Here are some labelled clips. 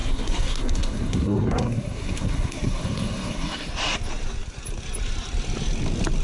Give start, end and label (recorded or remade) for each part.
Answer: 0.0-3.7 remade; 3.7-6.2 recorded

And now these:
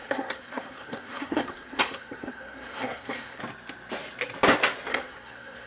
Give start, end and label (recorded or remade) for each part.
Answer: 0.0-3.4 remade; 3.4-4.9 recorded; 4.9-5.7 remade